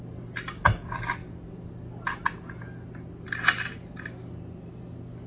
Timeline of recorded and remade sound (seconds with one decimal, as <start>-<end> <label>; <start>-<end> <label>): 0.0-5.3 recorded